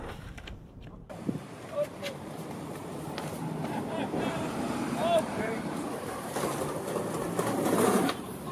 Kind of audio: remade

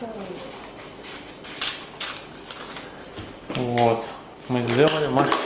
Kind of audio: recorded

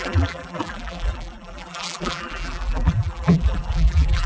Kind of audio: remade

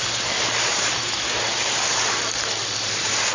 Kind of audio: recorded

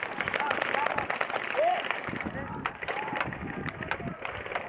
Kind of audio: recorded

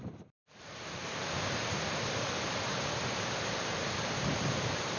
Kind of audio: remade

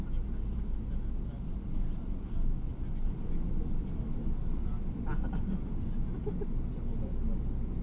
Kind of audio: recorded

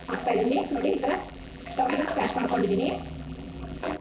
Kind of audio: remade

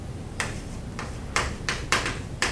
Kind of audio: remade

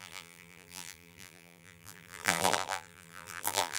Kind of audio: remade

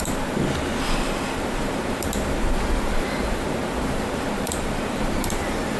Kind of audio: remade